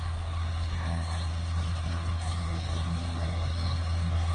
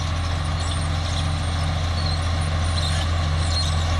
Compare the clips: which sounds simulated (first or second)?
first